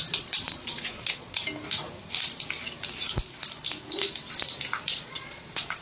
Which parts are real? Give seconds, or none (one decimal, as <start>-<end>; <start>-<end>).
1.4-4.9